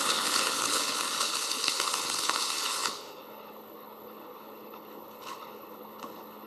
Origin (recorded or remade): remade